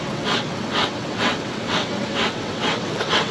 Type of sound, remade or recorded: remade